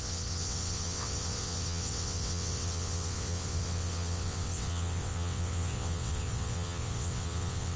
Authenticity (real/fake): fake